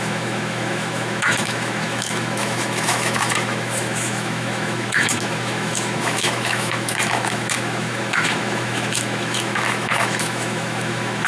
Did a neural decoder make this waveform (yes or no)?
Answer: yes